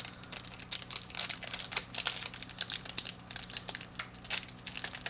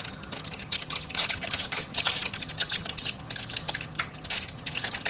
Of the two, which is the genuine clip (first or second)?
first